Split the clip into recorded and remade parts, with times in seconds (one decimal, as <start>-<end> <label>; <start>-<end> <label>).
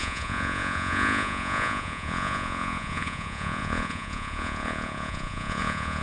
0.0-6.0 remade